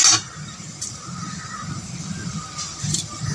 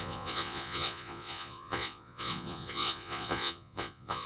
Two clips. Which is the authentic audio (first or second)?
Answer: first